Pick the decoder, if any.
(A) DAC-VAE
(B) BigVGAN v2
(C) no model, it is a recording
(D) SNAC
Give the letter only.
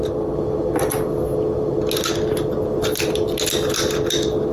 C